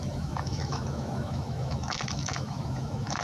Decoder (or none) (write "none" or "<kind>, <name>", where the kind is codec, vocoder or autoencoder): autoencoder, DAC-VAE